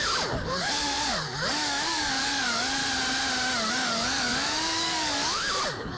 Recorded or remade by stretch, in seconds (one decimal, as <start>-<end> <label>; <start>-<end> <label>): 0.0-2.8 remade; 2.8-3.7 recorded; 3.7-6.0 remade